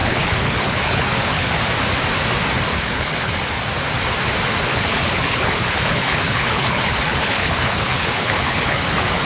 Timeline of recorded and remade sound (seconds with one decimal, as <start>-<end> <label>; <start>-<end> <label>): 0.0-1.5 remade; 1.5-2.7 recorded; 2.7-3.3 remade; 3.3-4.7 recorded; 4.7-9.2 remade